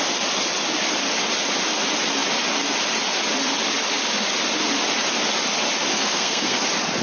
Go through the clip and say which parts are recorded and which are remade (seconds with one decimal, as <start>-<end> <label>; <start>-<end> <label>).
0.0-5.9 recorded; 5.9-6.6 remade; 6.6-7.0 recorded